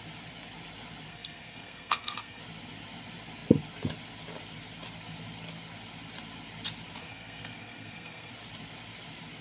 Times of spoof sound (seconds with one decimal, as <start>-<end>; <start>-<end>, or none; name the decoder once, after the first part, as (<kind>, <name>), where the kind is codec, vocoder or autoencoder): 1.1-2.4 (codec, SNAC); 7.0-8.3